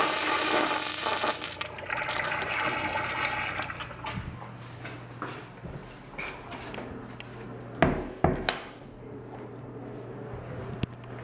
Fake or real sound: real